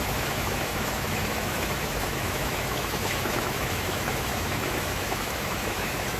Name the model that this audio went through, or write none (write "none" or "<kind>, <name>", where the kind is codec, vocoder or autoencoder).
autoencoder, DAC-VAE